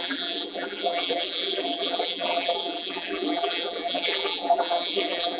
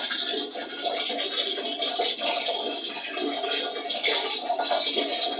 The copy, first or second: first